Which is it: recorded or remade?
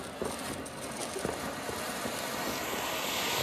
recorded